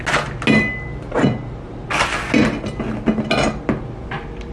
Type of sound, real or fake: real